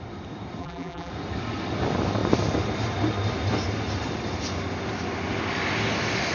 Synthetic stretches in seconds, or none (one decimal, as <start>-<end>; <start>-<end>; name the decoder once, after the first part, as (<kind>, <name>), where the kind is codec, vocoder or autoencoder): 0.6-1.1 (vocoder, BigVGAN v2)